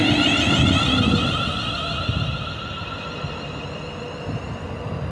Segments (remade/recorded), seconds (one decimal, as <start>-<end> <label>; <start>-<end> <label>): 0.0-5.1 recorded